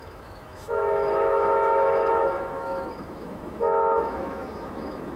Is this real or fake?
fake